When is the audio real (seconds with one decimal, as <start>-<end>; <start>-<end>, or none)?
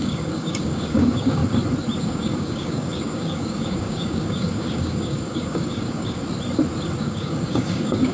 1.4-2.0; 6.2-7.0